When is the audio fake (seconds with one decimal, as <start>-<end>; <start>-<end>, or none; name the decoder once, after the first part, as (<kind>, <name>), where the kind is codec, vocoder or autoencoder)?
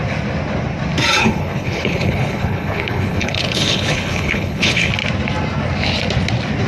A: 1.2-4.9 (codec, HILCodec)